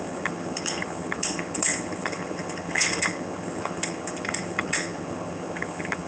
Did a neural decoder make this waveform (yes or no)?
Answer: yes